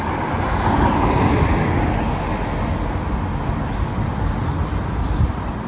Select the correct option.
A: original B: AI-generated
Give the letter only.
A